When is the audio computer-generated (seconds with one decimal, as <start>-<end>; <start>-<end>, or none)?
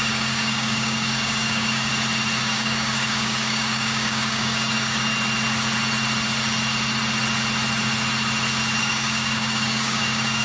0.0-1.9; 2.4-5.1; 8.8-10.4